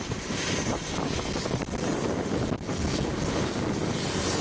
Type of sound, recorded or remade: recorded